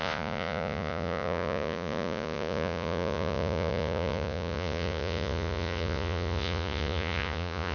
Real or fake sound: fake